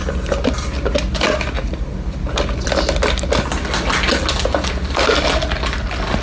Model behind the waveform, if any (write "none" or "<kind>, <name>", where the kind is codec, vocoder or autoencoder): none